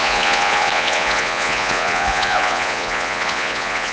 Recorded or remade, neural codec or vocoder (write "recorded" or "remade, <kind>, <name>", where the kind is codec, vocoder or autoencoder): remade, vocoder, Vocos